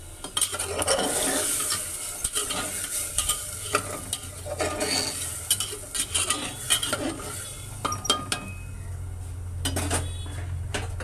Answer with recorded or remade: recorded